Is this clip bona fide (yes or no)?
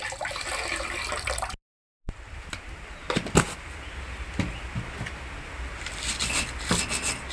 yes